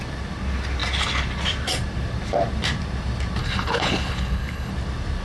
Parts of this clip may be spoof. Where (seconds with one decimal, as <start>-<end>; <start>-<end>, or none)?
3.4-4.7

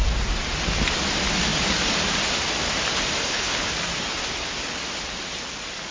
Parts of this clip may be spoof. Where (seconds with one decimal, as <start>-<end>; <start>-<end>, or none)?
3.2-3.7

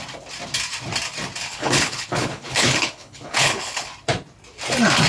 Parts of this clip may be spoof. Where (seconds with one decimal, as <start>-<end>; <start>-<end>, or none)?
1.5-3.9

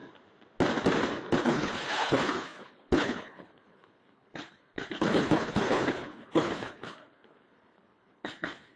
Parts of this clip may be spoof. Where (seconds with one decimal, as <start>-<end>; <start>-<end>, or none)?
1.4-8.8

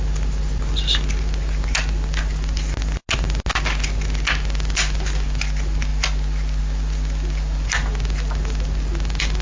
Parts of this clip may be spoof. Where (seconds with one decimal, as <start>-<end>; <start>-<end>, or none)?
none